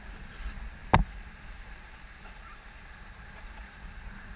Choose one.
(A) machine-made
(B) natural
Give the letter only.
B